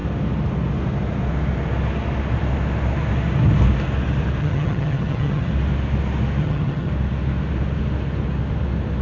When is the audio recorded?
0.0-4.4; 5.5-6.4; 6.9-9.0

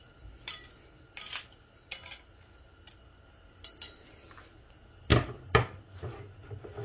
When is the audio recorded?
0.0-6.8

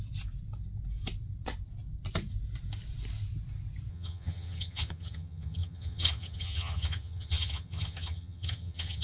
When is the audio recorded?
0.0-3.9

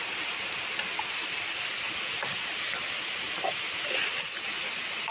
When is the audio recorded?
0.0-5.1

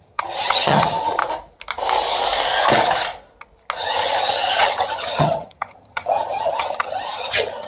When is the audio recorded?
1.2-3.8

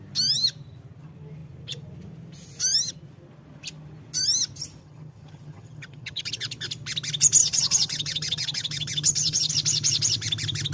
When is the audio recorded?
0.0-4.8; 6.3-7.4; 9.5-10.7

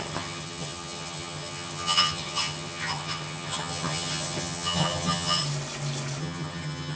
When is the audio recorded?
5.4-6.2

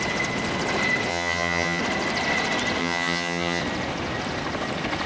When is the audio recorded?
0.0-1.1; 1.8-2.8; 3.6-5.1